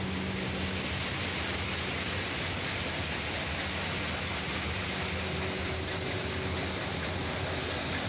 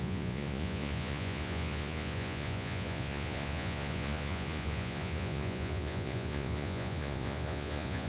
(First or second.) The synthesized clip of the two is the second